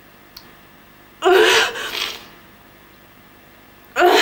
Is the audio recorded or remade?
recorded